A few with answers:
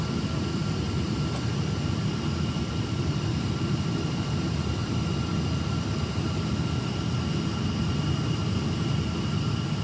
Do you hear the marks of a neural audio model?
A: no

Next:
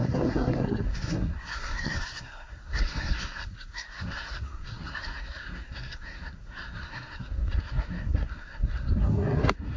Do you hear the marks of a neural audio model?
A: yes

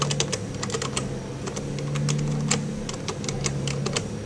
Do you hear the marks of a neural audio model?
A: no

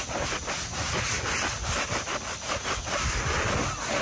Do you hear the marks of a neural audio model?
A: no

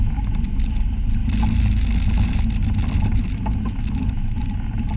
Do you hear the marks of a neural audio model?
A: no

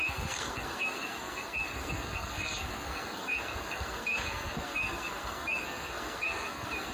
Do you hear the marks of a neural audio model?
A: yes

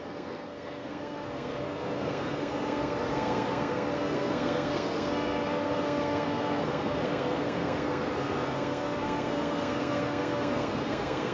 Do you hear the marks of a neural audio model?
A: yes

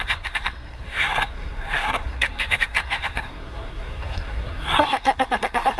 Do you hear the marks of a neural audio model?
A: yes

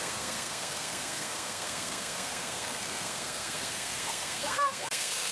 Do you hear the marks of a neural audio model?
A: yes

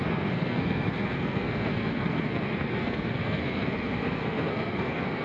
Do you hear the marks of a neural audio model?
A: yes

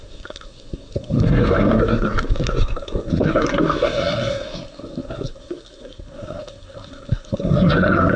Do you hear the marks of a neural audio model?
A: yes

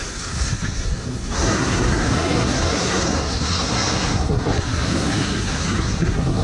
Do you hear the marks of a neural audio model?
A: yes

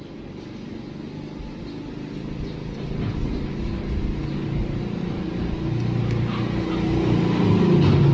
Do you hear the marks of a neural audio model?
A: no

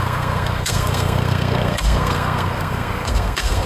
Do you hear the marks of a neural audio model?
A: yes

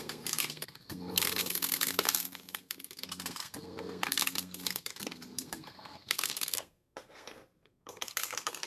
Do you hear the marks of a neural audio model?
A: yes